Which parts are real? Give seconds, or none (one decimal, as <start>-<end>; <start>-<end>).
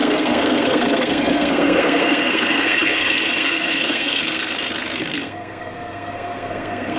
none